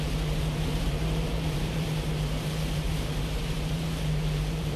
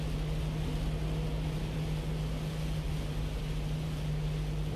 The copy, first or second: first